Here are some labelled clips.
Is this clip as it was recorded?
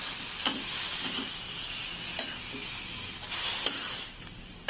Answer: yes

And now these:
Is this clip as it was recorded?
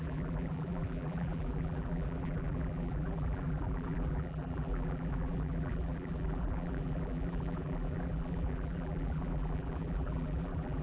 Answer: no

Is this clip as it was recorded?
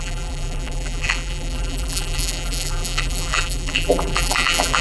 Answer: no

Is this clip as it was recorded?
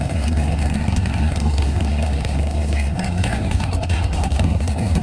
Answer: no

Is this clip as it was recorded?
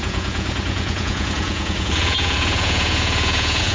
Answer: no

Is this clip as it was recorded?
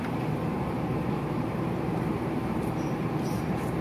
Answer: no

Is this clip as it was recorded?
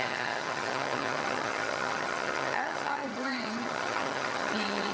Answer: no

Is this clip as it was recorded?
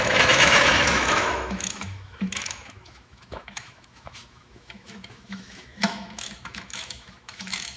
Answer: no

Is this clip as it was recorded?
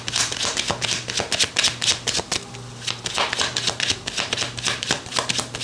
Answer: yes